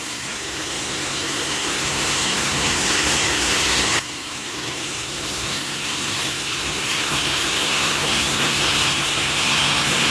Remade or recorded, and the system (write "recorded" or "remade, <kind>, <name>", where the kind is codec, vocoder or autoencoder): remade, codec, SNAC